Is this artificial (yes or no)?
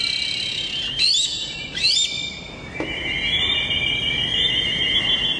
no